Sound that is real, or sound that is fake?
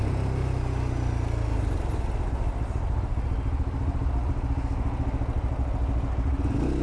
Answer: real